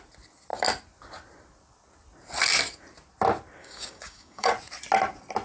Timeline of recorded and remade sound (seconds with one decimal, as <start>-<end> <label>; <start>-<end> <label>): 0.0-3.6 recorded; 3.6-4.5 remade; 4.5-5.4 recorded